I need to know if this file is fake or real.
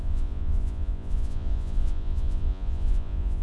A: fake